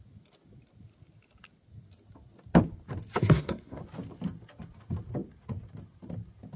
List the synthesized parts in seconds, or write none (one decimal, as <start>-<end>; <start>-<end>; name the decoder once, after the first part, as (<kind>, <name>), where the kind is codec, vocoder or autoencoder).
3.2-3.8 (codec, SNAC)